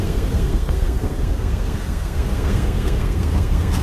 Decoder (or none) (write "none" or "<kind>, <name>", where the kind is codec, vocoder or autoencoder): codec, SNAC